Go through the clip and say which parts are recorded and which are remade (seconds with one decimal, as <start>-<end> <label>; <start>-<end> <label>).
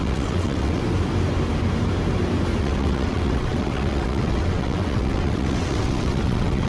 0.0-0.8 remade; 0.8-2.6 recorded; 2.6-6.7 remade